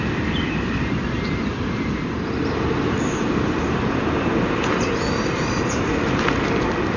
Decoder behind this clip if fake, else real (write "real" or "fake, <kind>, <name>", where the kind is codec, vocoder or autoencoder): fake, vocoder, BigVGAN v2